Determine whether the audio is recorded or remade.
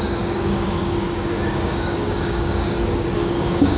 remade